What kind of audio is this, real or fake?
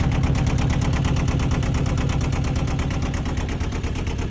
real